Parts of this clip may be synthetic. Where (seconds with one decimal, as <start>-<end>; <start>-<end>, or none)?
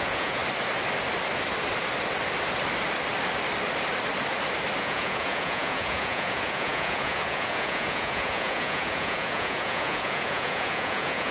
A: 0.0-0.4; 4.8-11.3